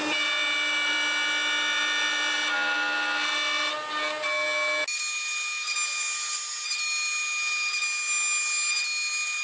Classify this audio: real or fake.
real